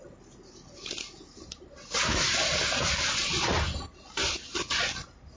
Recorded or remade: recorded